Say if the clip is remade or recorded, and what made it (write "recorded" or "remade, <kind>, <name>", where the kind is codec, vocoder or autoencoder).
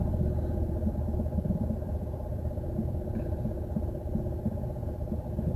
recorded